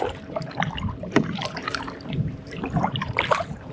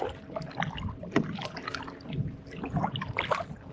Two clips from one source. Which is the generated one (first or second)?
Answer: first